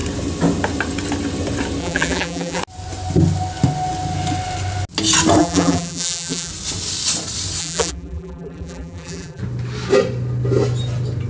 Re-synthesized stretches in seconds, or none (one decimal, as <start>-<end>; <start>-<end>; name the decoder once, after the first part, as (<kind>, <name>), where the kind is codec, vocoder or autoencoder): 1.8-2.6 (vocoder, BigVGAN v2); 5.4-6.5; 7.6-9.4